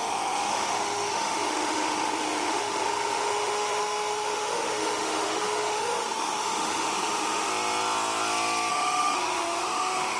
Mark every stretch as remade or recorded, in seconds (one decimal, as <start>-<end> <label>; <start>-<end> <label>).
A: 0.0-7.5 remade; 7.5-8.7 recorded; 8.7-10.2 remade